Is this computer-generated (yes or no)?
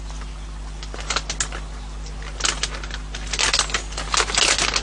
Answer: no